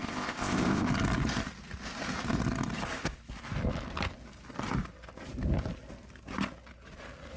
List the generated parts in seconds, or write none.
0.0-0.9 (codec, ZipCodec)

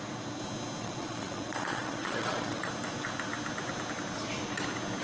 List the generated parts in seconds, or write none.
0.8-2.7 (vocoder, Vocos)